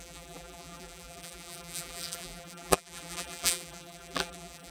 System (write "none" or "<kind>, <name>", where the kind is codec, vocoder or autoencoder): vocoder, BigVGAN v2